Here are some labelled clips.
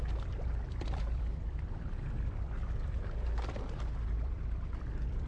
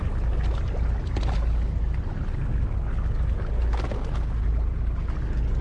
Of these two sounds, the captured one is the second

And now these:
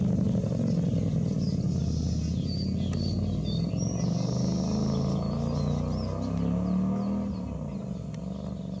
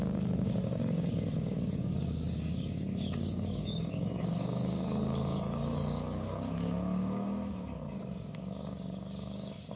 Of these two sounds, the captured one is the first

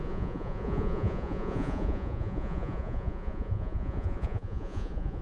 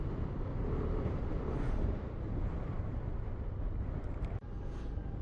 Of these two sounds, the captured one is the second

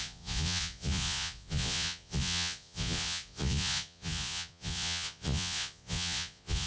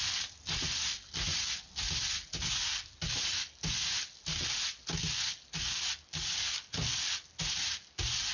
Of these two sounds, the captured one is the second